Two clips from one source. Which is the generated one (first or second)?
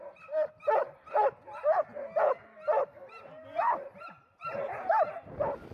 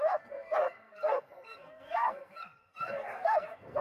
second